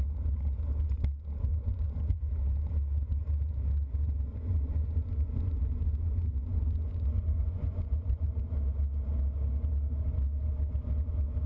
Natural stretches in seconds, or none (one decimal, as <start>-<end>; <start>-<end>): 0.0-1.5; 2.2-4.3; 8.4-11.5